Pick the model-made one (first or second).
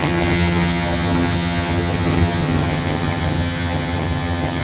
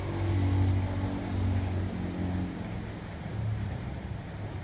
first